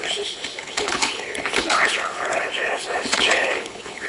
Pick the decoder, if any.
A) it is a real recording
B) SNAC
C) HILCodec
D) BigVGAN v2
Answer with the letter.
C